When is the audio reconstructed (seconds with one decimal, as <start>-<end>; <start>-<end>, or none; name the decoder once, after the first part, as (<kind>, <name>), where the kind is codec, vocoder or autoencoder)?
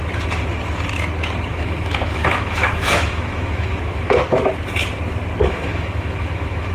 1.5-4.2 (autoencoder, DAC-VAE); 5.4-6.7